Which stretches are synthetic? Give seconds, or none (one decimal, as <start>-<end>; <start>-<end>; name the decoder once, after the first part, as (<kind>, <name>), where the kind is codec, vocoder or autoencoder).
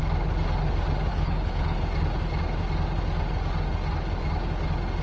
1.1-1.8 (codec, HILCodec)